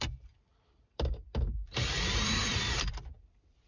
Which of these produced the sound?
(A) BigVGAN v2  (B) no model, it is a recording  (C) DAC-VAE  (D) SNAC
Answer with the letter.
A